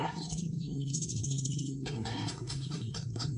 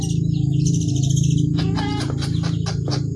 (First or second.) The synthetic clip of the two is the first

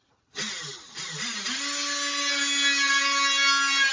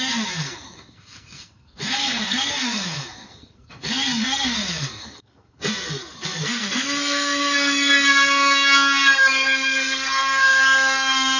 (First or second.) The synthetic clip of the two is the second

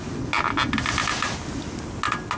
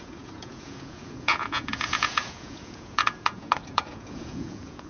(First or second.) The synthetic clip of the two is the second